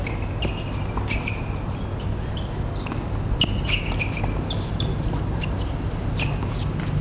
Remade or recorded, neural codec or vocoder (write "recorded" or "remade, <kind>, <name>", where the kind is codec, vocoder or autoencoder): recorded